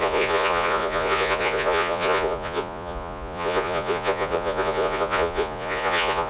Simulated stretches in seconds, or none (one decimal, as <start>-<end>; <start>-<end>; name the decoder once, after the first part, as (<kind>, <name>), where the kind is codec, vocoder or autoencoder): 0.0-6.3 (vocoder, Vocos)